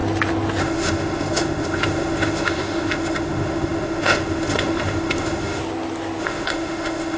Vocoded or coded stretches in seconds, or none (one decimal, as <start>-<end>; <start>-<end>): 0.6-5.6; 6.2-7.2